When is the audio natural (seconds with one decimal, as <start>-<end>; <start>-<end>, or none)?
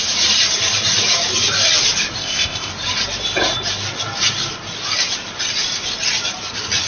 0.0-2.2; 2.7-6.9